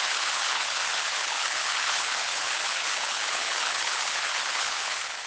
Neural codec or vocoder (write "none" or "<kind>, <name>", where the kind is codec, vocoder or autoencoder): codec, HILCodec